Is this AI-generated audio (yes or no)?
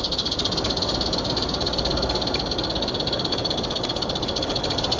no